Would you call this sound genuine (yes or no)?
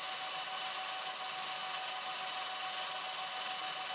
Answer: yes